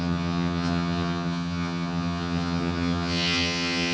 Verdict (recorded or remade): remade